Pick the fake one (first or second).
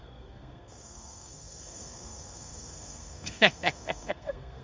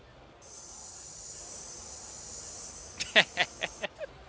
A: first